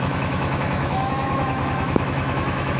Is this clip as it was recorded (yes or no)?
no